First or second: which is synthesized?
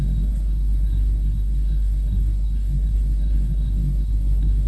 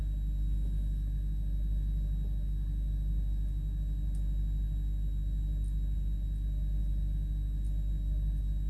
first